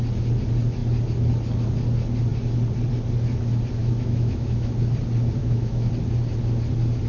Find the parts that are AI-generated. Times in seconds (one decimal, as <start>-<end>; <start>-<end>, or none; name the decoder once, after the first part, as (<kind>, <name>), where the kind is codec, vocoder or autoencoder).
3.8-4.7 (autoencoder, DAC-VAE); 5.4-5.9

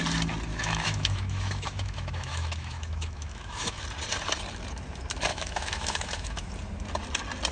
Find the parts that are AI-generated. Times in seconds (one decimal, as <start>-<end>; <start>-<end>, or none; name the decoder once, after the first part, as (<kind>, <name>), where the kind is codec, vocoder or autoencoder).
0.5-3.8 (autoencoder, DAC-VAE); 5.3-6.5

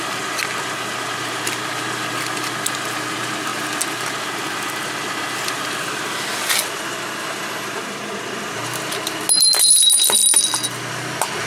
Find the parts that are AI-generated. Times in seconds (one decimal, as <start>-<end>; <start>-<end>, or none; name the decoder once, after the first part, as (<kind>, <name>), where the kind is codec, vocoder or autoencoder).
none

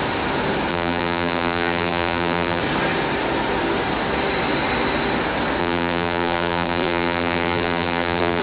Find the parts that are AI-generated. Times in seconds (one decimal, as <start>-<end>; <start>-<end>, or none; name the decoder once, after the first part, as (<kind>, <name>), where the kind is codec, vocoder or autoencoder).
0.7-2.6 (vocoder, BigVGAN v2); 5.6-8.4

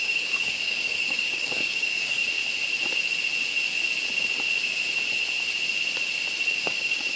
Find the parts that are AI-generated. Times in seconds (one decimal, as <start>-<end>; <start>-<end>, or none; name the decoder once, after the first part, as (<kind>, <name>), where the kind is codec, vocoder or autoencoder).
0.0-2.2 (codec, DAC); 6.5-7.2

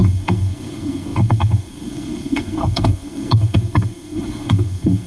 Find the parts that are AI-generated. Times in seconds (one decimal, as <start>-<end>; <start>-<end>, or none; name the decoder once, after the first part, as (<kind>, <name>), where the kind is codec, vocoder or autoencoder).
0.0-5.1 (codec, SNAC)

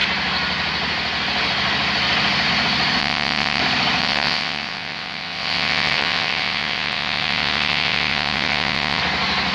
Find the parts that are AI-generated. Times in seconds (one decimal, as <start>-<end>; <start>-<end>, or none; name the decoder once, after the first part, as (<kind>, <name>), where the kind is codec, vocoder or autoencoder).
3.0-3.6 (vocoder, WaveNeXt); 4.0-9.0